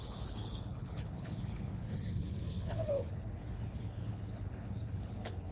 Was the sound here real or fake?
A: fake